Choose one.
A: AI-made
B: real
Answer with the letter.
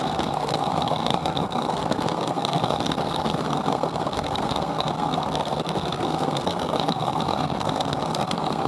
A